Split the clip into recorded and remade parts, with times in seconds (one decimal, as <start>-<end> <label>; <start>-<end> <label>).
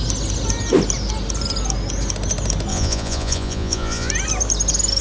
0.0-2.7 recorded; 2.7-4.1 remade; 4.1-5.0 recorded